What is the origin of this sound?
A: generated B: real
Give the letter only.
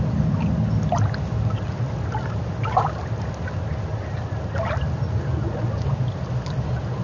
B